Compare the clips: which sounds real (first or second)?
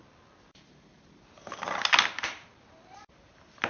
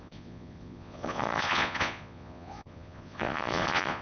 first